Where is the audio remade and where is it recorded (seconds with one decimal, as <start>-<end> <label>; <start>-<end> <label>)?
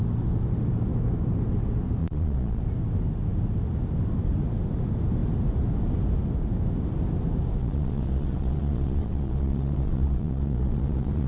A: 0.0-2.0 recorded; 2.0-2.6 remade; 2.6-7.6 recorded; 7.6-11.3 remade